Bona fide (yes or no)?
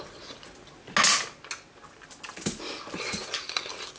yes